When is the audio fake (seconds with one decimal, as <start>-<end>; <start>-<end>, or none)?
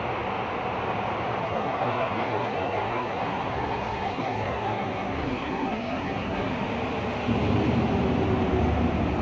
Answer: 1.4-6.5